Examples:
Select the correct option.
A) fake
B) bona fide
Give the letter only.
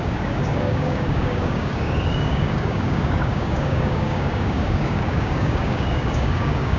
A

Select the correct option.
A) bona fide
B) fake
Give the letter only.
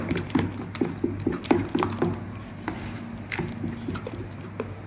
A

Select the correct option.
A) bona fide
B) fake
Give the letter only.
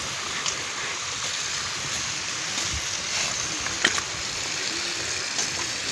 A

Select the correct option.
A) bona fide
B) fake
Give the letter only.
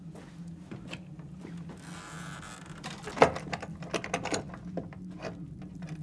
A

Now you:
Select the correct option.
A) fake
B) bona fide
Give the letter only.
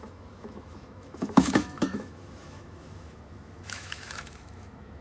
A